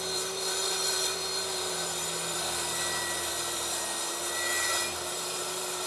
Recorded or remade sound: remade